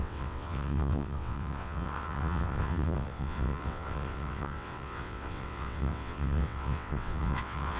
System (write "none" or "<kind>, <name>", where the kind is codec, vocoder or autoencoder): vocoder, WaveNeXt